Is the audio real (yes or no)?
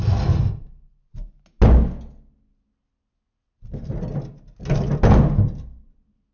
yes